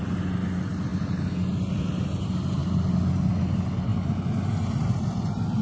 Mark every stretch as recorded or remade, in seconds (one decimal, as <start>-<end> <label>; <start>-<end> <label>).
0.0-5.6 recorded